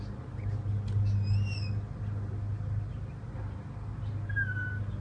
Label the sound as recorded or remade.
recorded